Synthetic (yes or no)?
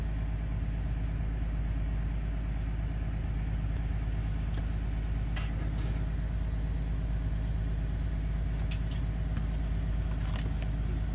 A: no